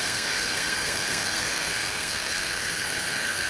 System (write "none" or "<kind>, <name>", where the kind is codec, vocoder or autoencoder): codec, SNAC